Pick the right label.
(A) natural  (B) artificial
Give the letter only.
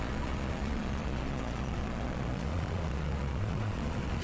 B